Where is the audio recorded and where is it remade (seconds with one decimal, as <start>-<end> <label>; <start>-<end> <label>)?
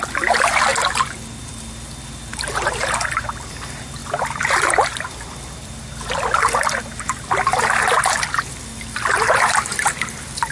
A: 0.0-4.0 recorded; 4.0-6.8 remade; 6.8-9.7 recorded; 9.7-10.5 remade